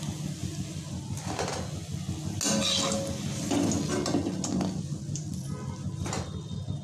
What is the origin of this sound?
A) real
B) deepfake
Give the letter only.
A